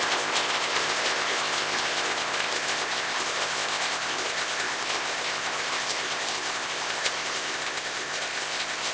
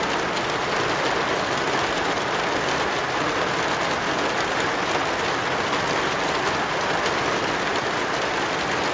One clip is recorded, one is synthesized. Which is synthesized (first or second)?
first